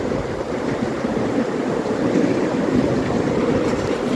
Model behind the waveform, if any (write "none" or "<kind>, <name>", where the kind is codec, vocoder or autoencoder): vocoder, BigVGAN v2